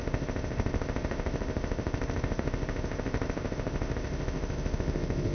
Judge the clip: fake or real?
fake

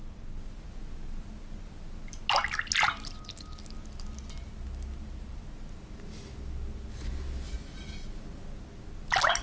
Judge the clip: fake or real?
real